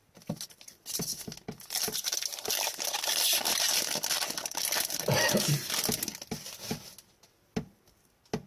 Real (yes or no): yes